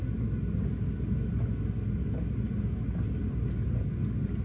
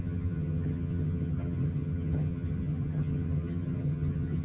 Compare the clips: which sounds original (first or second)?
first